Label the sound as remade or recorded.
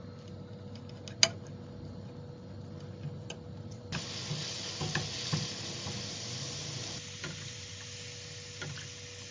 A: recorded